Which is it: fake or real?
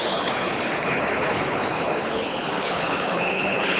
fake